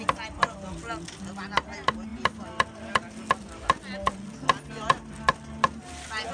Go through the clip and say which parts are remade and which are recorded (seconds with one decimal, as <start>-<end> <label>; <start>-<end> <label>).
0.0-6.3 recorded